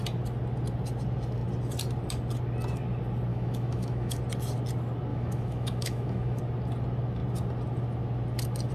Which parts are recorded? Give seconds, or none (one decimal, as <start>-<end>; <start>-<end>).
0.0-3.3; 4.2-5.1; 6.4-8.7